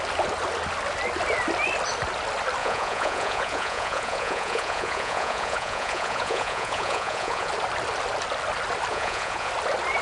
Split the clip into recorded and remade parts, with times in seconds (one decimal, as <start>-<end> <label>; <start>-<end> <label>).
0.0-2.6 recorded; 2.6-7.5 remade; 7.5-8.9 recorded; 8.9-9.5 remade; 9.5-10.0 recorded